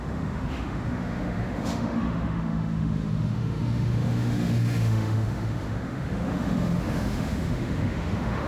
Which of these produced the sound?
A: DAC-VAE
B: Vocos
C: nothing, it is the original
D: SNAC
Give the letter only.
A